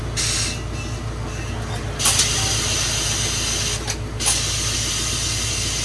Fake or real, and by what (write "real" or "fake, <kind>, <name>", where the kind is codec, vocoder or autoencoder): real